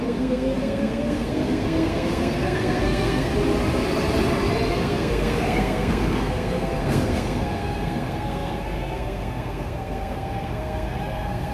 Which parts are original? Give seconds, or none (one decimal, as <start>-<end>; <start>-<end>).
3.3-4.7